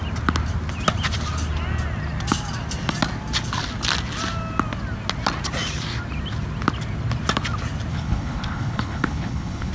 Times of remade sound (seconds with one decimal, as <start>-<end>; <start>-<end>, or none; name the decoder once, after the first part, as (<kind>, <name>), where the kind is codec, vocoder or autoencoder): 7.9-9.7 (codec, HILCodec)